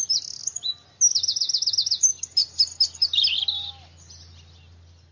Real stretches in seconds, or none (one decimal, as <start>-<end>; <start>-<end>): 0.0-5.1